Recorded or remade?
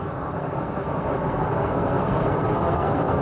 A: remade